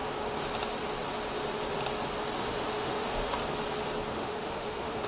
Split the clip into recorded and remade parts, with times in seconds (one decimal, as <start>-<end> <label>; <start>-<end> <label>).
0.0-2.4 recorded; 2.4-3.4 remade; 3.4-4.1 recorded; 4.1-5.1 remade